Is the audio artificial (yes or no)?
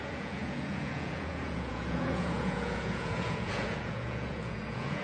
yes